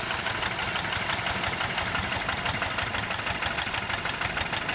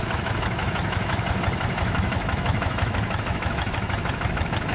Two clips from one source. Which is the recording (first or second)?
first